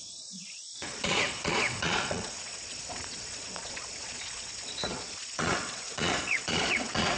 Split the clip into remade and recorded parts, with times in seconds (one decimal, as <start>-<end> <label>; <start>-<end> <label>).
0.0-7.2 remade